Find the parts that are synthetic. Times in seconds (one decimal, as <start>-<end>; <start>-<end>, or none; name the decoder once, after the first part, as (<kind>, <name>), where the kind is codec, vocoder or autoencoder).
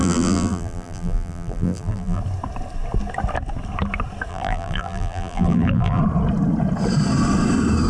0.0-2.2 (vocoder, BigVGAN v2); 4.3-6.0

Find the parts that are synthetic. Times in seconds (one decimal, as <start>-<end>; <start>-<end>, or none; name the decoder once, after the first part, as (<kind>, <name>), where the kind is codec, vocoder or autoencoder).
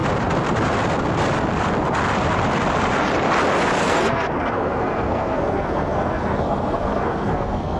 3.8-7.8 (codec, SNAC)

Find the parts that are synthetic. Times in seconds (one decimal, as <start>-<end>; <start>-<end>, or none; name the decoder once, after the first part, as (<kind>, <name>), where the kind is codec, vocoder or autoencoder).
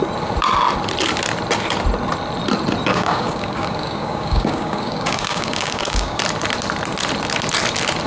2.9-6.2 (codec, DAC)